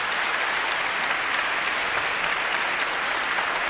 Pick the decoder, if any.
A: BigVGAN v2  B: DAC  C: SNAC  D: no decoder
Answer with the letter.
D